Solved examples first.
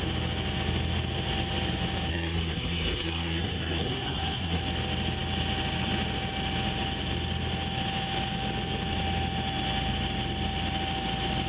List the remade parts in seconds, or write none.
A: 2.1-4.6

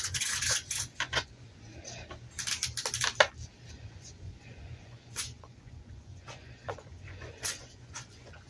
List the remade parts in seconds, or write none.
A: 0.0-1.7; 3.7-8.5

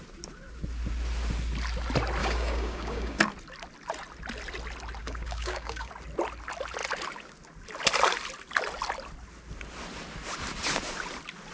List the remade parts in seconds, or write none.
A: 2.2-3.2; 5.0-5.9